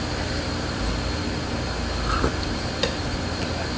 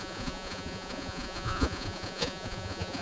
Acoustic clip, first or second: first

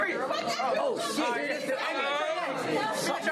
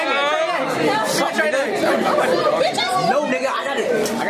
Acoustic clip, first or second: second